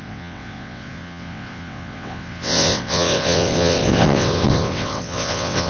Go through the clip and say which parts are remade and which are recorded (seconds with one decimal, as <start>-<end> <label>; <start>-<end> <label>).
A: 0.0-5.7 remade